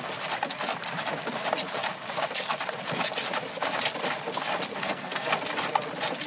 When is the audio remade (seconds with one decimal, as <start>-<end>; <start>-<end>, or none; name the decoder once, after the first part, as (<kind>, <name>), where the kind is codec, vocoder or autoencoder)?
4.7-5.3 (codec, SNAC)